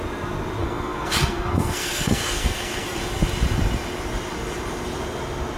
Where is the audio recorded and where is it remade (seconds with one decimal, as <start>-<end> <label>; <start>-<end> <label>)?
0.0-0.6 recorded; 0.6-3.0 remade; 3.0-5.6 recorded